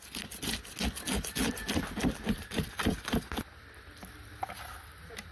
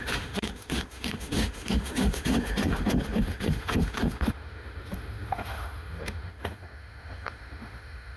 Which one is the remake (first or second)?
second